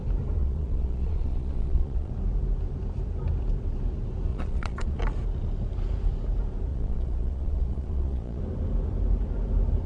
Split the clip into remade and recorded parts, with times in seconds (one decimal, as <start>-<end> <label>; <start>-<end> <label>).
0.0-0.4 recorded; 0.4-2.1 remade; 2.1-4.3 recorded; 4.3-5.0 remade; 5.0-6.7 recorded; 6.7-8.4 remade; 8.4-9.9 recorded